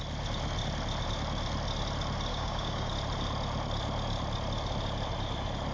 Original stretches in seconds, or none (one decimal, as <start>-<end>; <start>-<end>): 0.0-2.3; 2.9-5.7